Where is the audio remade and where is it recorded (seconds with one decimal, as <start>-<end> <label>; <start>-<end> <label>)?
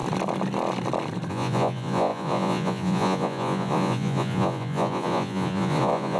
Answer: 0.0-1.3 recorded; 1.3-6.2 remade